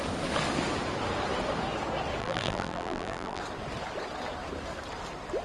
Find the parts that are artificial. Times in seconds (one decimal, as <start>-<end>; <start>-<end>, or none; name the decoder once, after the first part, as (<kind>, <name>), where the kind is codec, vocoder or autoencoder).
2.2-3.4 (vocoder, BigVGAN v2)